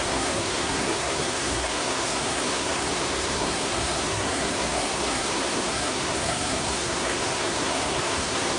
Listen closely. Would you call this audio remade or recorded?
remade